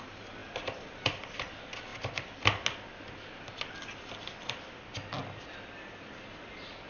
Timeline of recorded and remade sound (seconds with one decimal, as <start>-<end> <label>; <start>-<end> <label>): 0.0-6.9 recorded